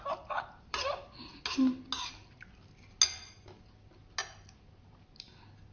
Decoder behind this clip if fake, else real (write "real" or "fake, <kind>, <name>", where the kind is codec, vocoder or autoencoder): real